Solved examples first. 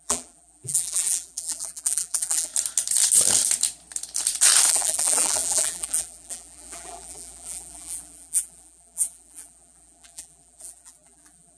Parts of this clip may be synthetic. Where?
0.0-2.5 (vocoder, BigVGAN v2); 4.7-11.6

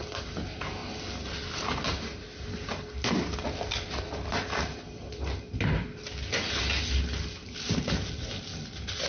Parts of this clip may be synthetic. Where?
none

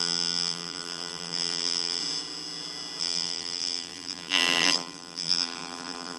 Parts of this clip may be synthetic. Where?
0.0-2.0 (vocoder, BigVGAN v2); 3.0-6.2

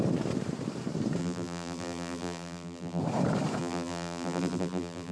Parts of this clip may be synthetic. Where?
1.2-3.0 (vocoder, BigVGAN v2); 3.6-5.1

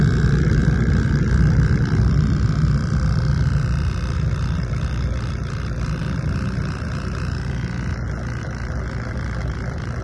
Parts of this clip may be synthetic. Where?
0.0-6.0 (vocoder, BigVGAN v2); 8.4-10.0